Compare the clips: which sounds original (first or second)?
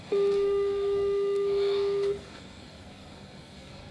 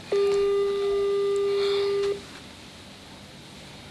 second